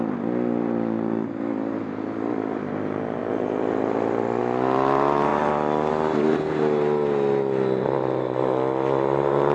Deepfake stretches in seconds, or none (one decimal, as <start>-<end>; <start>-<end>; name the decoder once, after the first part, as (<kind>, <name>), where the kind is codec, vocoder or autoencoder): none